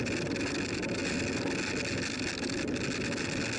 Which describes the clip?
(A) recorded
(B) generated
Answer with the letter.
A